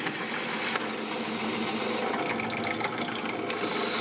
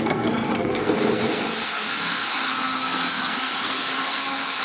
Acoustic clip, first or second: first